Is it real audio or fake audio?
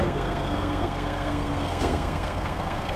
fake